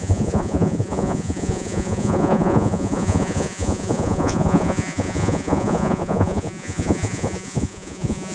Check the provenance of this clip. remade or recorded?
remade